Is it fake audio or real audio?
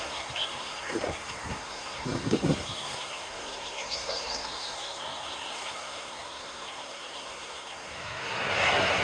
fake